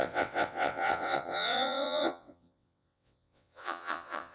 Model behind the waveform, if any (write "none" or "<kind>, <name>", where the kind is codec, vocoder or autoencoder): vocoder, WaveNeXt